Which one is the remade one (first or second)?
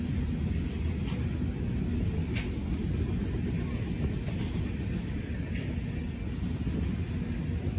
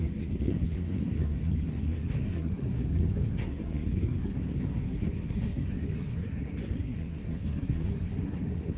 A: second